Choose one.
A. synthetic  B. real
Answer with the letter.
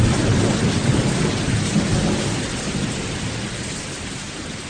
B